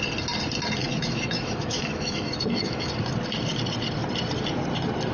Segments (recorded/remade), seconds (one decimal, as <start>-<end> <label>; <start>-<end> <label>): 0.0-0.8 recorded; 0.8-2.9 remade; 2.9-5.1 recorded